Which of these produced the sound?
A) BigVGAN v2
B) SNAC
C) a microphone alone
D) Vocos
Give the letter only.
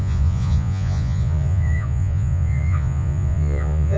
D